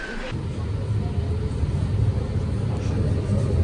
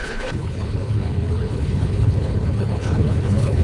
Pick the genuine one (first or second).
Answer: first